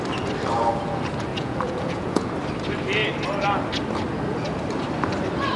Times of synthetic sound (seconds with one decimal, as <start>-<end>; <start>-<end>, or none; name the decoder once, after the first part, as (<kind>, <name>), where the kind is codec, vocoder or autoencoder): 1.3-2.3 (vocoder, Vocos)